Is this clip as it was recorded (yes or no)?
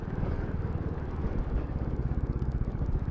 no